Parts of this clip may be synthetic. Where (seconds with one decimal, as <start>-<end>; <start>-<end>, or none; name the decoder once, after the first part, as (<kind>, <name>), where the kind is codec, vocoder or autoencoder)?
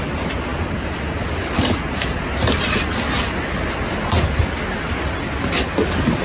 none